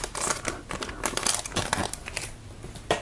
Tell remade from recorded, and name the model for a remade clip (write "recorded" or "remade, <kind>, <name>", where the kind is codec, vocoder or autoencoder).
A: recorded